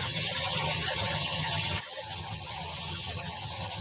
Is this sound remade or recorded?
remade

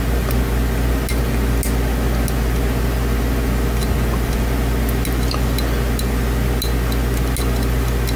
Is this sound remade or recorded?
recorded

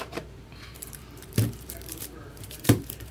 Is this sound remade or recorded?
remade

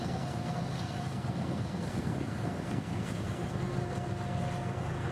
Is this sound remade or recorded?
remade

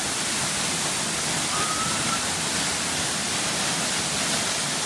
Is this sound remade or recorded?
recorded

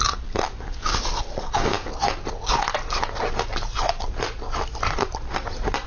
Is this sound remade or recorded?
recorded